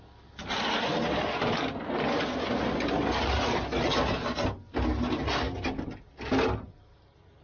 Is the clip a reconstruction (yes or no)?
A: no